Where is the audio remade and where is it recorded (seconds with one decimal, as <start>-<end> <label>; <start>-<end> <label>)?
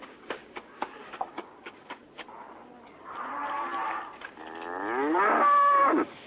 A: 0.0-2.0 remade; 2.0-5.8 recorded; 5.8-6.3 remade